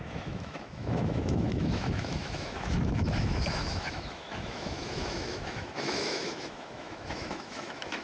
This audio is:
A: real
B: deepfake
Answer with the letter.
B